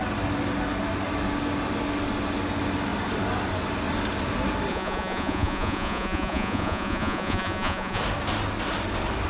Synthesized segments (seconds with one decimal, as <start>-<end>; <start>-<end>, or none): 4.7-8.0